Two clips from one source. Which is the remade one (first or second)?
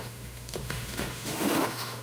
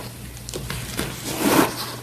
first